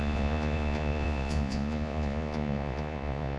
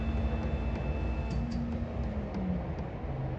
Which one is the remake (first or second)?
first